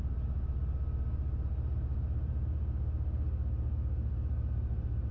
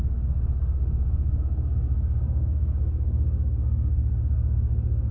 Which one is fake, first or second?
second